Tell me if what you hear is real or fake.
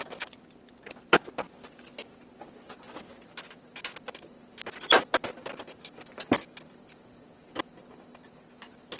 real